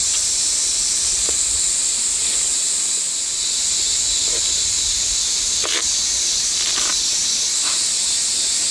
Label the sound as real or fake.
real